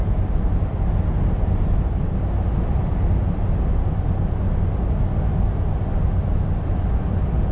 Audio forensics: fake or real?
real